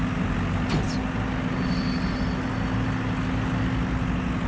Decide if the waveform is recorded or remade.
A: recorded